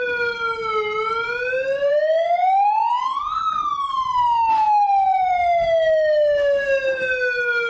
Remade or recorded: recorded